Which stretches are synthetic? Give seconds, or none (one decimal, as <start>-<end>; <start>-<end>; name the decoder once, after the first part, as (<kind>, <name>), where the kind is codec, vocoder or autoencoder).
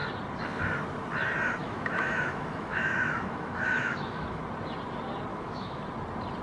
1.6-4.4 (autoencoder, DAC-VAE); 5.3-5.8